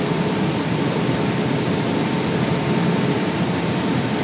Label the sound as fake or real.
fake